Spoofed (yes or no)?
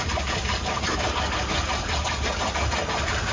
no